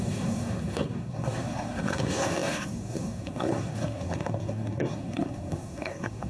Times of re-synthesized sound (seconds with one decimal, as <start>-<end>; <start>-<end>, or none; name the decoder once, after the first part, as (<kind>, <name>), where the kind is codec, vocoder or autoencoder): 0.0-6.3 (codec, SNAC)